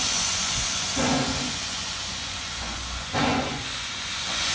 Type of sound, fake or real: fake